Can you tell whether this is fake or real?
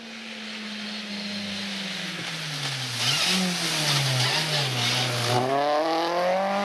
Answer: real